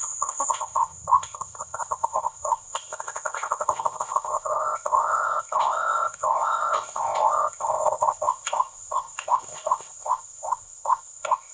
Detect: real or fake fake